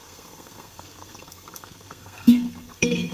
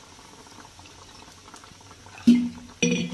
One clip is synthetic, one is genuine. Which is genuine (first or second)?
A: second